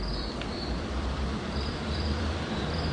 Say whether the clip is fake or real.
fake